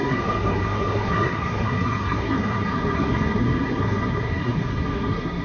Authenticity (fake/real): fake